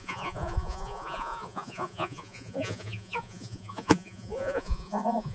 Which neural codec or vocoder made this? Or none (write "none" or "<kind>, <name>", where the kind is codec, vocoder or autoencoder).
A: vocoder, Vocos